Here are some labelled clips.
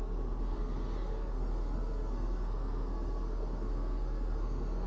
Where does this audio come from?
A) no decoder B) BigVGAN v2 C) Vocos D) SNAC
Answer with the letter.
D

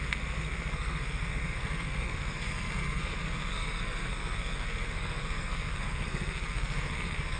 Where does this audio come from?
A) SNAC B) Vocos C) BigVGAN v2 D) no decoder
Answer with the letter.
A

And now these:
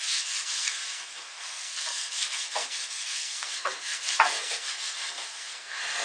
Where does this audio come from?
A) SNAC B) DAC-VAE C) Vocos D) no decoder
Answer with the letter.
A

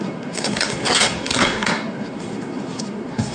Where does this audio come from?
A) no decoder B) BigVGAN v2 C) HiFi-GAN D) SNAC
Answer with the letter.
D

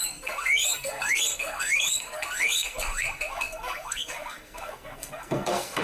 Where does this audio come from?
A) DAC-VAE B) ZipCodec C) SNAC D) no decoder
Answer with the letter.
C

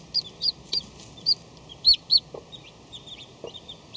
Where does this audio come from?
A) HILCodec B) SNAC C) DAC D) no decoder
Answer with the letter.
D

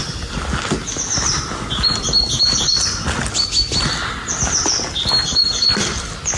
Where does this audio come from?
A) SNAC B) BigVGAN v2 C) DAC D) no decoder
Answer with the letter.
D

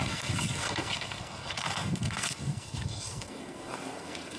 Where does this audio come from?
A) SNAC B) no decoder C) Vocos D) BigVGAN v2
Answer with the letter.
A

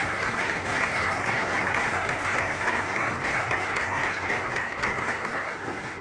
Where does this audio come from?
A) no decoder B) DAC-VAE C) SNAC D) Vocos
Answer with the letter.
C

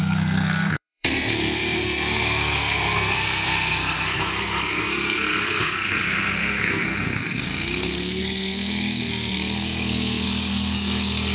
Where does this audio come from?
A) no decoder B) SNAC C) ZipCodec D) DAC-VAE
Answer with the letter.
B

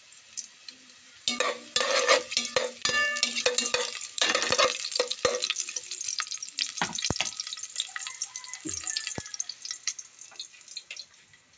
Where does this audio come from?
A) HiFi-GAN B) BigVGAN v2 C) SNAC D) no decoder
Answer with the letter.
D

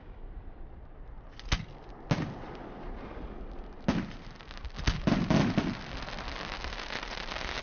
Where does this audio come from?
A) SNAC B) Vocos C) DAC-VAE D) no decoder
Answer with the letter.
D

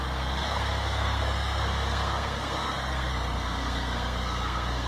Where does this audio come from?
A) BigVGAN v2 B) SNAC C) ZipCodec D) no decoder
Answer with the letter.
B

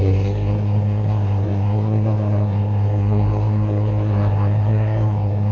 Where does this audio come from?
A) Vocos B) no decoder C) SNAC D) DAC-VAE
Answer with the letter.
C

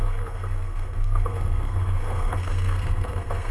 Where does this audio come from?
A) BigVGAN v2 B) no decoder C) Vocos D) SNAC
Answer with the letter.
D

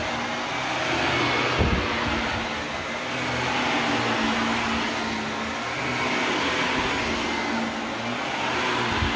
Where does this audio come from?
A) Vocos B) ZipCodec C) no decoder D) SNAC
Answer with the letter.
C